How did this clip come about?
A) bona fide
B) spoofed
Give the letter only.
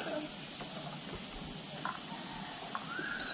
A